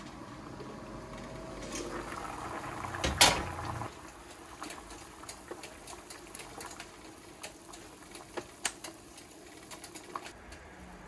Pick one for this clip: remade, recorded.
recorded